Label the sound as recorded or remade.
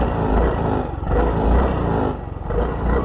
recorded